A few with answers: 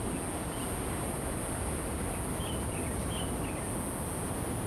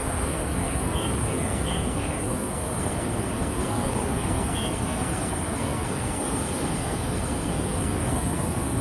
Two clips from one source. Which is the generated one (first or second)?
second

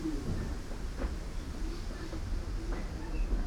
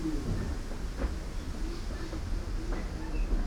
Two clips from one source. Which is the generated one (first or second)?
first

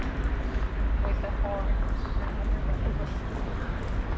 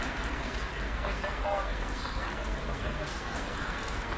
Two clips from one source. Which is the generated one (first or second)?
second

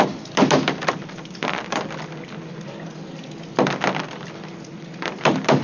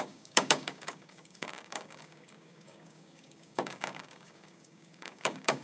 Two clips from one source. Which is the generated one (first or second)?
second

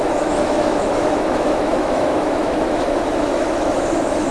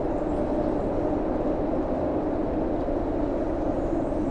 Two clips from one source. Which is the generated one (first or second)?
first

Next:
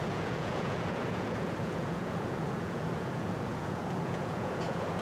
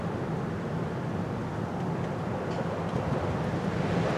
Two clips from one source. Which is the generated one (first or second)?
first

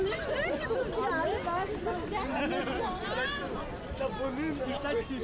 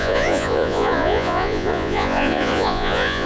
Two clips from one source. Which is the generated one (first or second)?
second